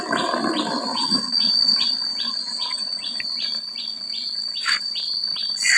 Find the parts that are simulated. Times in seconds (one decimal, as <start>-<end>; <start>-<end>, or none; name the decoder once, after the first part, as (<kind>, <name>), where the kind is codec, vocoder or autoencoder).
0.9-1.5 (vocoder, Vocos); 2.4-3.2